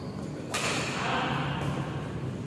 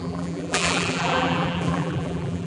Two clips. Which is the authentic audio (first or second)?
first